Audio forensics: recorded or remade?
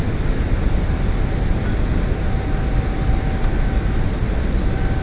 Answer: recorded